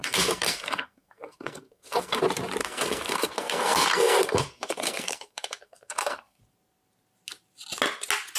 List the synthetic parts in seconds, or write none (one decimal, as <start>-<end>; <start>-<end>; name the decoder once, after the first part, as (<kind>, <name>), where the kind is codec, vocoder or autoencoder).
0.0-2.2 (codec, SNAC); 2.6-6.4